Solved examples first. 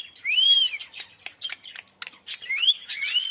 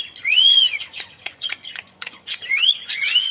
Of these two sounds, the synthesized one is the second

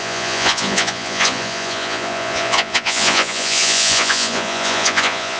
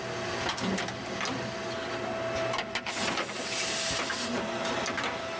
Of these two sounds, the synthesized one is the first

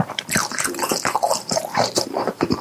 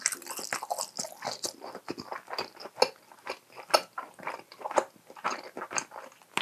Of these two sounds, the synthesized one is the first